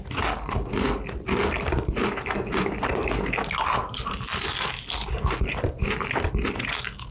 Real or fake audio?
real